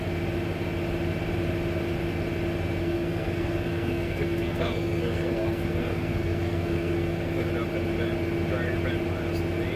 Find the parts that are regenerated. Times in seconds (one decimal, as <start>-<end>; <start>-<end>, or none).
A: 2.8-7.5